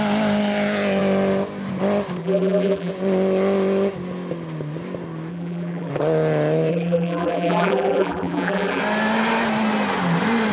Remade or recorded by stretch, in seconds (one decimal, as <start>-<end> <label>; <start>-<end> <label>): 0.0-2.2 recorded; 2.2-2.9 remade; 2.9-5.3 recorded; 5.3-5.9 remade; 5.9-6.7 recorded; 6.7-8.8 remade; 8.8-10.5 recorded